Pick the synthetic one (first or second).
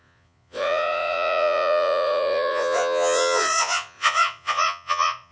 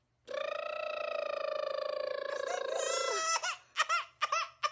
first